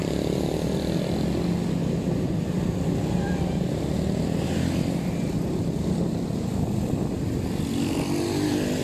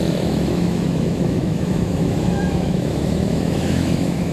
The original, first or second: first